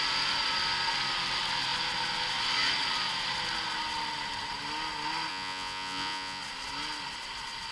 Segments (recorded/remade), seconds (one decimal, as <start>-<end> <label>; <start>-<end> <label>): 0.0-5.3 recorded; 5.3-6.4 remade; 6.4-7.7 recorded